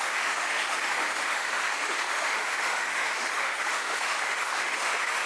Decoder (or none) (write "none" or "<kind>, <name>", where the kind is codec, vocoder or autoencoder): autoencoder, DAC-VAE